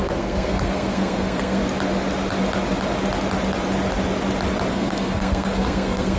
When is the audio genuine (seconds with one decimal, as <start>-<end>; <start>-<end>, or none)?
1.6-4.7